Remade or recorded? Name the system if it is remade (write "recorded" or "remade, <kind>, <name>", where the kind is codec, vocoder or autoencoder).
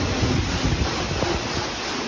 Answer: recorded